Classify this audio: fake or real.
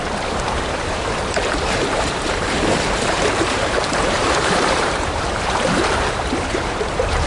fake